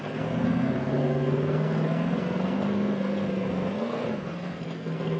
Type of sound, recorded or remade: remade